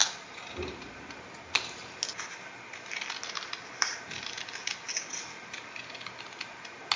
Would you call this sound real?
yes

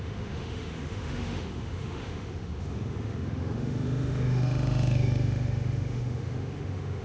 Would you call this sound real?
no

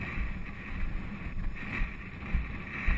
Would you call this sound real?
yes